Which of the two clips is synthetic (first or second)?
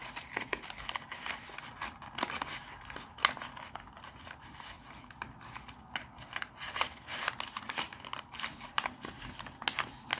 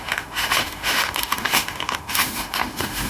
second